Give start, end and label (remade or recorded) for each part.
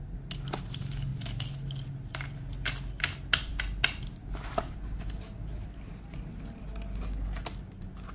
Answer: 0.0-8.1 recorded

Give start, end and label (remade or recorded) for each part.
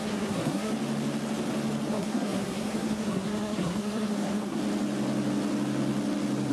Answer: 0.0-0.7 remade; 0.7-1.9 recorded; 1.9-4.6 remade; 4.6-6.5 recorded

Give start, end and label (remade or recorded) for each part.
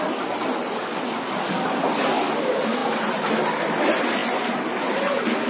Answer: 0.0-5.5 recorded